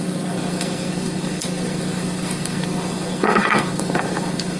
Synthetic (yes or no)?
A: yes